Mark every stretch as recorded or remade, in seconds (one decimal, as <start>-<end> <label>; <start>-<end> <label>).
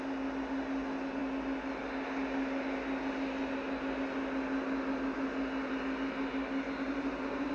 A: 0.0-7.5 recorded